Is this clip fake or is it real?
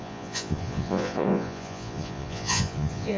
fake